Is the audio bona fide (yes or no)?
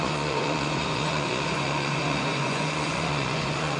no